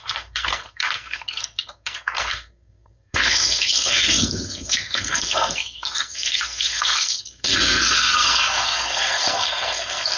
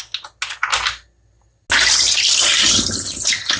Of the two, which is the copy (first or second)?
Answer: first